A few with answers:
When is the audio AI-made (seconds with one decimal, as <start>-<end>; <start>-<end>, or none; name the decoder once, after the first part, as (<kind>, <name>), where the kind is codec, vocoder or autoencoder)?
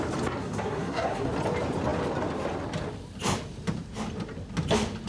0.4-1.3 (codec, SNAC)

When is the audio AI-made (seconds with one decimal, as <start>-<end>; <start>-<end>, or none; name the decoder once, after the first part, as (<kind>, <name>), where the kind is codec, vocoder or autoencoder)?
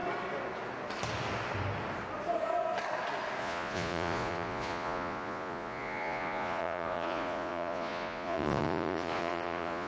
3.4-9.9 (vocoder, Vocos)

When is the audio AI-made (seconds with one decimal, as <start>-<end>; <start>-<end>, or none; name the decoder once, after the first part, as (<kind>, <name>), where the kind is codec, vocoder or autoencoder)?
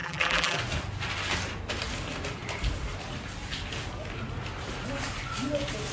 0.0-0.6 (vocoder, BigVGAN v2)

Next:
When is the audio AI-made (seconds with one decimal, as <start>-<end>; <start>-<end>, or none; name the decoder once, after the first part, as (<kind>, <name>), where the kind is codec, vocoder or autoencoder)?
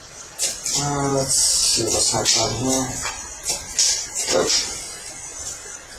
none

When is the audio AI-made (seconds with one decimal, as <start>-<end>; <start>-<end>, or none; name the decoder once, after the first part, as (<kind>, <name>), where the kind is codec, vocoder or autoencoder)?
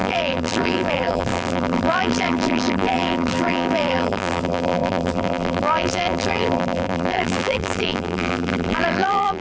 0.0-9.4 (vocoder, BigVGAN v2)